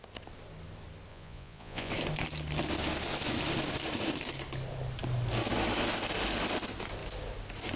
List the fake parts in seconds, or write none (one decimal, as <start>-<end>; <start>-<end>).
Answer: 1.1-1.9